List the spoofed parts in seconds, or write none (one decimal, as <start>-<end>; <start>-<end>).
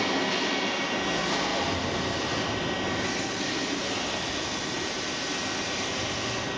none